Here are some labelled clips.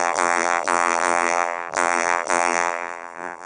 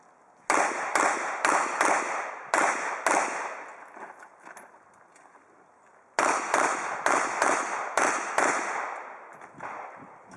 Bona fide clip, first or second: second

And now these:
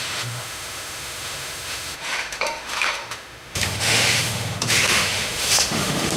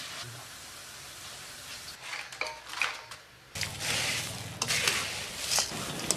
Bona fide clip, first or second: second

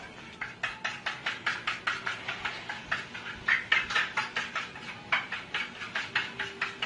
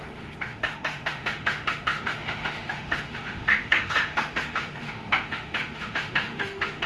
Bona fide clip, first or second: first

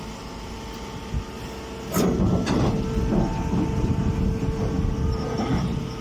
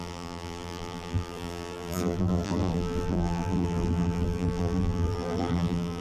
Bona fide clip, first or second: first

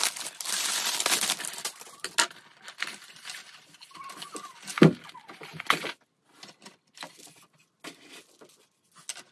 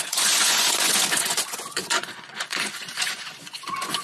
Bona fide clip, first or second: first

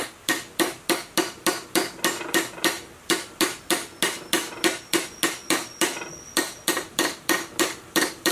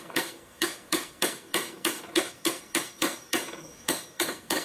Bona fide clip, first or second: first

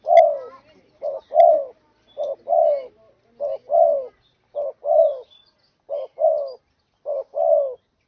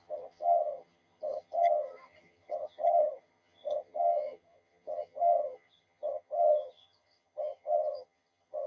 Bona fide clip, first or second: first